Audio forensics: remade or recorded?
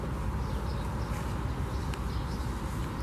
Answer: recorded